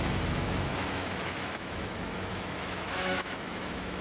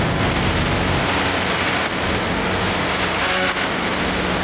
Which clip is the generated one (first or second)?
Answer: first